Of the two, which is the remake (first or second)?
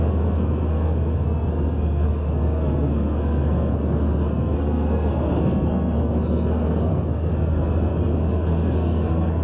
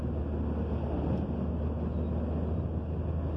first